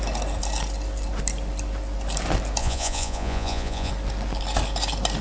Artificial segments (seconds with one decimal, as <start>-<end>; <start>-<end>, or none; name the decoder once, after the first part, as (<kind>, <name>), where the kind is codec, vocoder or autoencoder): 2.6-3.9 (vocoder, Vocos)